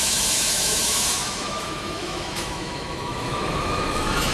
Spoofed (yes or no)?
yes